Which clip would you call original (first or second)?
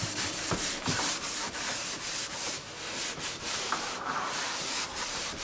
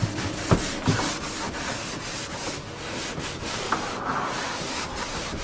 second